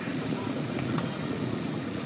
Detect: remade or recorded remade